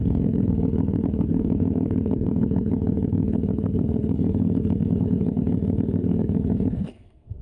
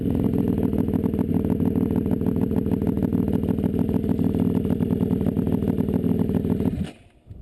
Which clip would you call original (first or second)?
second